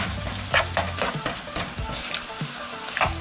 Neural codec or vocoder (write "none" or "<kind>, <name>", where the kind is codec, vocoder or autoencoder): none